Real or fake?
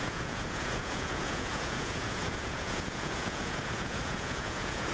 fake